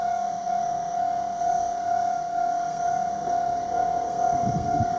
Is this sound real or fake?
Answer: fake